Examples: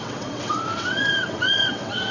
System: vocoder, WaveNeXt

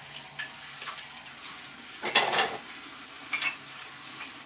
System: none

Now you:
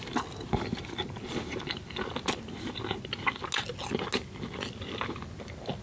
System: none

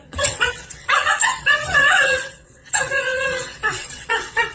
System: vocoder, WaveNeXt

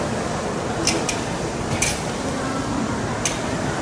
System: none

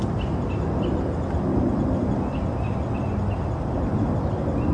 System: none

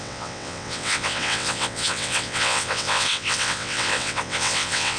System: vocoder, WaveNeXt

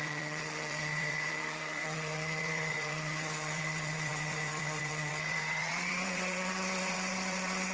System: vocoder, WaveNeXt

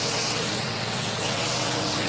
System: vocoder, WaveNeXt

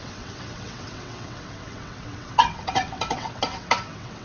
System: vocoder, WaveNeXt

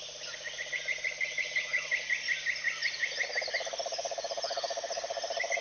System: none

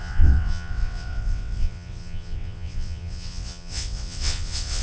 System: vocoder, WaveNeXt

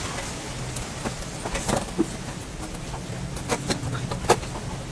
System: none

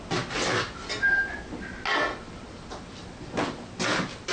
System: none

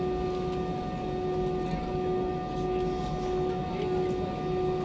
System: none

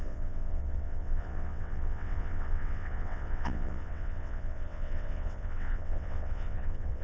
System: vocoder, WaveNeXt